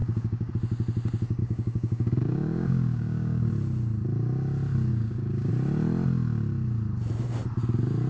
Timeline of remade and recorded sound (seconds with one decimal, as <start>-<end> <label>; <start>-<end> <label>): 0.0-0.5 remade; 0.5-1.4 recorded; 1.4-3.5 remade; 3.5-4.9 recorded; 4.9-5.5 remade; 5.5-8.1 recorded